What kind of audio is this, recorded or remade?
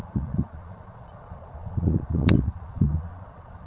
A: remade